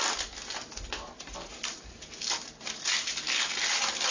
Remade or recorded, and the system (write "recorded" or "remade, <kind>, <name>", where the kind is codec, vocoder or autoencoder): recorded